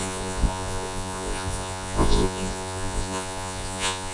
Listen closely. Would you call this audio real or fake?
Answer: fake